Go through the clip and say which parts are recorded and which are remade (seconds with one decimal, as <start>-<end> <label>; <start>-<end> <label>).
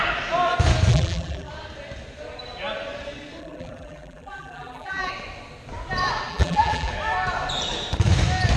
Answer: 0.0-0.9 recorded; 0.9-1.5 remade; 1.5-3.4 recorded; 3.4-5.1 remade; 5.1-6.3 recorded; 6.3-6.9 remade; 6.9-8.6 recorded